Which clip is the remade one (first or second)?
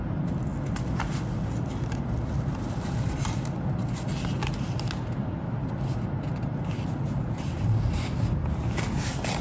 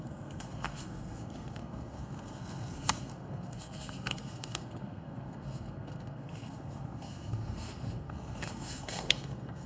second